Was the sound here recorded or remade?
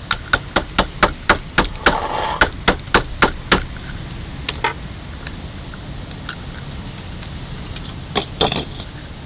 recorded